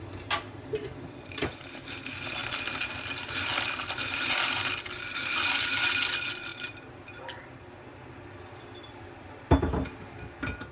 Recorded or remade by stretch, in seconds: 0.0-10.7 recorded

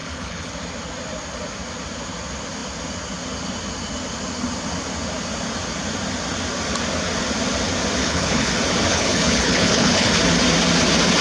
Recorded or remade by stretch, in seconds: 0.0-0.5 remade; 0.5-8.0 recorded; 8.0-8.5 remade; 8.5-8.9 recorded; 8.9-10.1 remade; 10.1-11.2 recorded

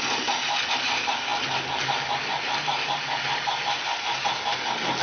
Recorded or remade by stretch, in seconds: 0.0-5.0 recorded

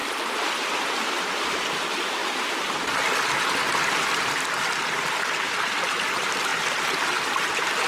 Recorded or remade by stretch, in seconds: 0.0-2.2 remade; 2.2-4.9 recorded; 4.9-6.5 remade; 6.5-7.3 recorded; 7.3-7.9 remade

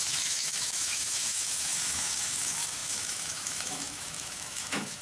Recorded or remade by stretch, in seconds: 0.0-5.0 remade